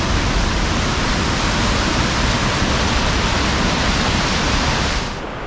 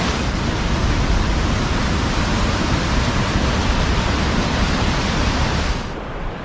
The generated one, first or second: second